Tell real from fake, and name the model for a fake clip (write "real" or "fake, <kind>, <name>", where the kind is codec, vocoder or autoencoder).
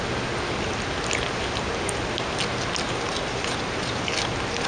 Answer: real